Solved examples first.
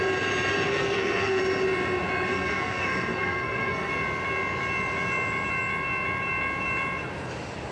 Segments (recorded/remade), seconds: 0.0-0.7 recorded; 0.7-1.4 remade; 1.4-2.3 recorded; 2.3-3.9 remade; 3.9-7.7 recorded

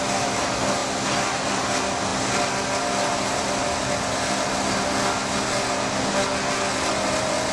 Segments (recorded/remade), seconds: 0.0-7.5 recorded

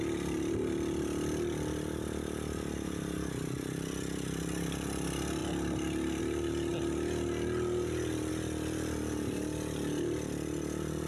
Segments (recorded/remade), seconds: 0.0-11.1 recorded

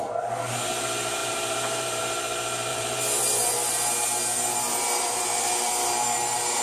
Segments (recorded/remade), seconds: 0.0-1.2 recorded; 1.2-2.0 remade; 2.0-2.7 recorded; 2.7-6.6 remade

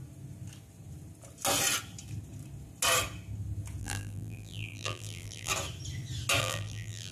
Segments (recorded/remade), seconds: 0.0-3.8 recorded; 3.8-5.5 remade; 5.5-6.4 recorded; 6.4-7.1 remade